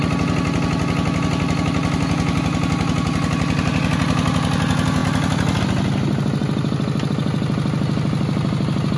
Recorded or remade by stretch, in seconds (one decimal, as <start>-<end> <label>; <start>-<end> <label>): 0.0-9.0 recorded